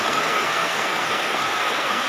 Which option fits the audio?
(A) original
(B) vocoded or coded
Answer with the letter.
B